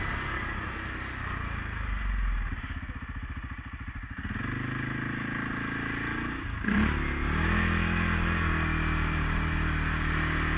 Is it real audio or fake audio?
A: real